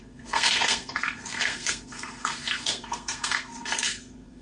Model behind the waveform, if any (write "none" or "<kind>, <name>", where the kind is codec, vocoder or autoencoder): codec, SNAC